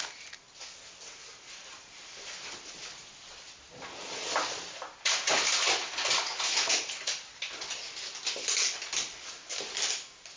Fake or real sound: real